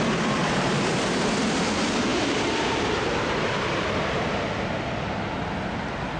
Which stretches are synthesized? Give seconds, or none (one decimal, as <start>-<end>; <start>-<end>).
0.4-1.4; 2.1-4.4